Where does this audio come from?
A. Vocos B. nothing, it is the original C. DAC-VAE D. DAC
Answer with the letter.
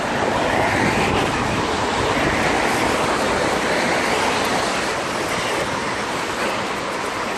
B